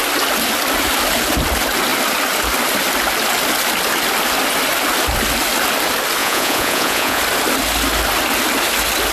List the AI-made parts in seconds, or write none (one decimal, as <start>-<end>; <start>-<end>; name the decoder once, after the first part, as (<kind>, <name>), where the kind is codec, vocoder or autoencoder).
6.2-7.2 (vocoder, Vocos)